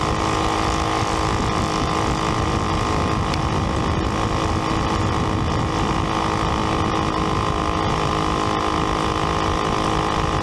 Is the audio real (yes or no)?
yes